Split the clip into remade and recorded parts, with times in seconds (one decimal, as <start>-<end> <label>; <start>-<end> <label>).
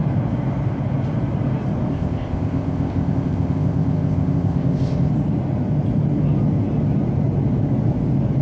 0.0-1.9 recorded; 1.9-5.1 remade; 5.1-8.4 recorded